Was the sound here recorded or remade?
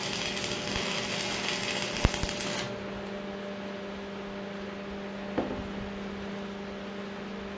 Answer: recorded